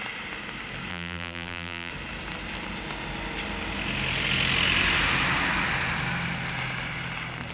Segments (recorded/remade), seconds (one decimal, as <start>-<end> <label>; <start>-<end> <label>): 0.0-0.9 recorded; 0.9-1.9 remade; 1.9-7.5 recorded